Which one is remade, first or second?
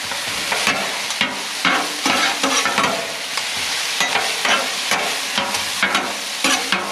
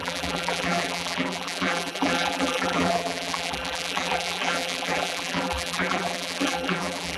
second